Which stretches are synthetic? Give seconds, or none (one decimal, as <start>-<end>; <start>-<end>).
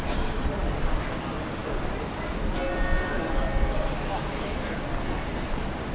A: none